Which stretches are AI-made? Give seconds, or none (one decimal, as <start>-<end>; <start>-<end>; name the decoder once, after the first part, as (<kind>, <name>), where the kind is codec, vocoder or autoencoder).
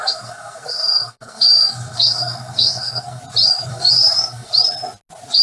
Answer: 0.0-3.2 (codec, SNAC); 3.7-4.5